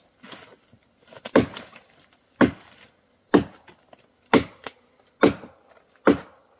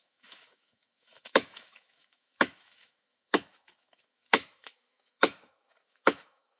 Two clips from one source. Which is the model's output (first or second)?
second